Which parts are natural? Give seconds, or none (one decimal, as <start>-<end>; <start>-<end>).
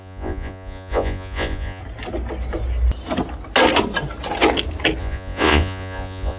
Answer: 1.8-5.0